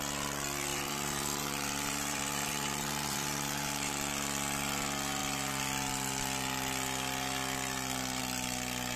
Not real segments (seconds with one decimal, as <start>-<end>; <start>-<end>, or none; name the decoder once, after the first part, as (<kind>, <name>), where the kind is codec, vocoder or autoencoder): 0.7-3.9 (vocoder, BigVGAN v2)

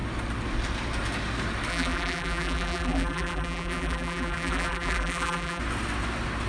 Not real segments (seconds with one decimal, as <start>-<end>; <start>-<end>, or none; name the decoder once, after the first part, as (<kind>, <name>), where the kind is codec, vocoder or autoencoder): 1.7-5.6 (vocoder, BigVGAN v2)

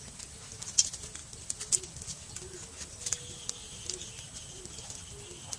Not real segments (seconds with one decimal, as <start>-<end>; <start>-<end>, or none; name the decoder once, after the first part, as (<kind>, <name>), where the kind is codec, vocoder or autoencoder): none

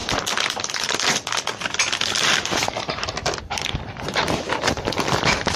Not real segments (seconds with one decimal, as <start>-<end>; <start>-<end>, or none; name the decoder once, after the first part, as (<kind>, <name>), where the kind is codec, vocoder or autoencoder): none

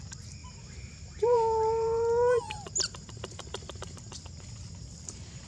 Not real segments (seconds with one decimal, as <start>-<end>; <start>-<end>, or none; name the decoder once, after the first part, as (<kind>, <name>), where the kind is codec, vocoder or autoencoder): 0.4-3.7 (vocoder, BigVGAN v2)